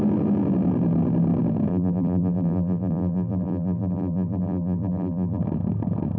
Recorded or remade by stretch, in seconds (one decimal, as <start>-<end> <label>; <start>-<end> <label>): 0.0-1.7 recorded; 1.7-5.4 remade; 5.4-6.2 recorded